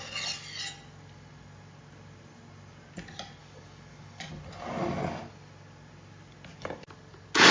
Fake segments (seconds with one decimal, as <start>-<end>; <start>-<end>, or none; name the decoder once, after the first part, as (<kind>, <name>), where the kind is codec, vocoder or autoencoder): 3.4-4.3 (codec, DAC)